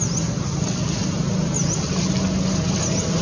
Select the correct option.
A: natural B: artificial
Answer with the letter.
A